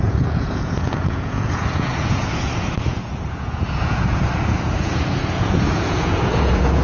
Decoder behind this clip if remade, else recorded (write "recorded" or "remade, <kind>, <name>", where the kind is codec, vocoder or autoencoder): remade, vocoder, Vocos